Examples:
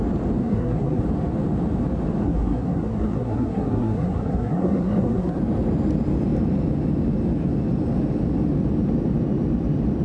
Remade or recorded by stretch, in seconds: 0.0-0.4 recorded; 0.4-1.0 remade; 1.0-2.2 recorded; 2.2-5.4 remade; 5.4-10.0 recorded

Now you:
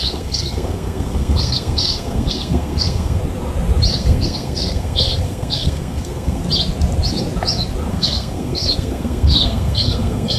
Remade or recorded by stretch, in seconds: 0.0-3.2 remade; 3.2-3.9 recorded; 3.9-6.4 remade; 6.4-7.9 recorded; 7.9-10.4 remade

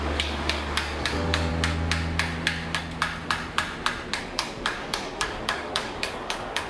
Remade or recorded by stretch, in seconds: 0.0-1.5 remade; 1.5-4.2 recorded; 4.2-6.7 remade

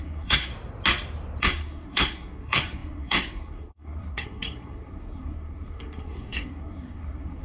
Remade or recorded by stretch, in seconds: 0.0-0.5 remade; 0.5-1.4 recorded; 1.4-7.4 remade